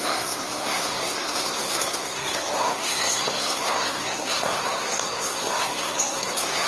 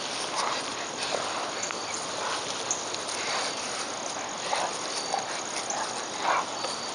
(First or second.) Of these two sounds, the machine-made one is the first